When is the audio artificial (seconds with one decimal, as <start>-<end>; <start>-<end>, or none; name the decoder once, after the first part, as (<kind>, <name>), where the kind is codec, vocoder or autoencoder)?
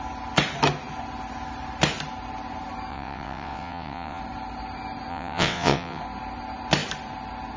2.9-4.2 (vocoder, WaveNeXt); 5.1-6.0